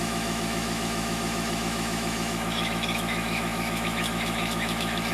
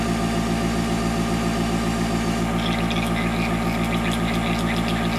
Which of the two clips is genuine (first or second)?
second